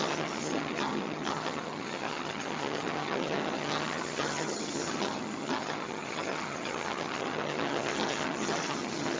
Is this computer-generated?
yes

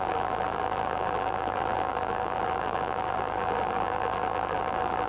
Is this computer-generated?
yes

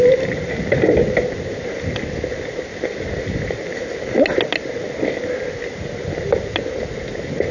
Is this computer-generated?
no